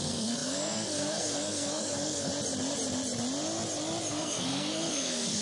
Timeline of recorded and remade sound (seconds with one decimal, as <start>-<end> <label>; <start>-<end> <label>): 0.0-2.3 remade; 2.3-4.1 recorded; 4.1-5.4 remade